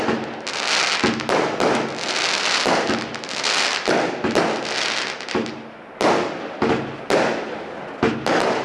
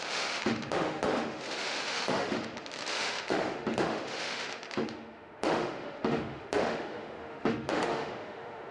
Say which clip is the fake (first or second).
second